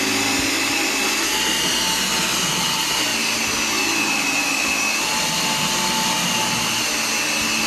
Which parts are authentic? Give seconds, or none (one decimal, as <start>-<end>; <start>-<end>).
0.0-7.7